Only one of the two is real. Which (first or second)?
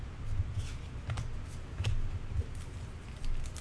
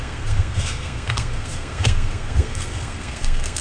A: first